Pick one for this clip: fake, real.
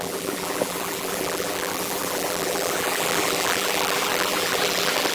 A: fake